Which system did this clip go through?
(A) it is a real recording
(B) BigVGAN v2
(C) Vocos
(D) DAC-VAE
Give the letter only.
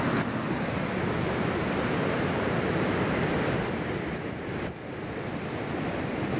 B